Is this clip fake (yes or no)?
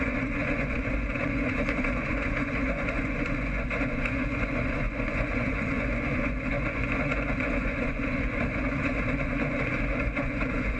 yes